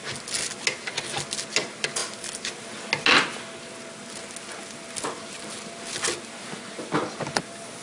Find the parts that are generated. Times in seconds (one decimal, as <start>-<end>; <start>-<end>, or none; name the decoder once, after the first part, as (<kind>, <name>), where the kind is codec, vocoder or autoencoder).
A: none